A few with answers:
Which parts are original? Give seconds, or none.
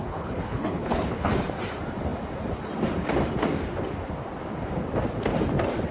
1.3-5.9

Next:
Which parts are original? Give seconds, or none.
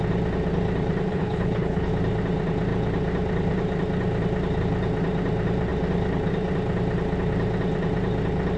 0.0-1.1; 1.9-8.6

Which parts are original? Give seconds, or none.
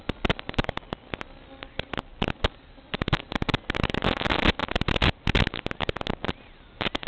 0.0-7.1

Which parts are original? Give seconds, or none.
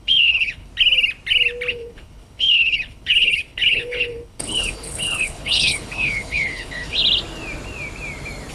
0.7-1.7; 7.0-8.5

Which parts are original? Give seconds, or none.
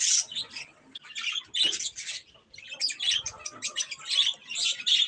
0.0-5.1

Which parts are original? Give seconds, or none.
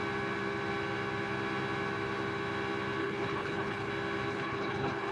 0.0-3.0; 3.9-4.3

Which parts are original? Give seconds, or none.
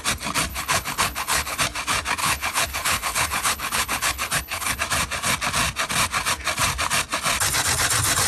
0.0-0.5; 1.6-2.2; 4.8-8.3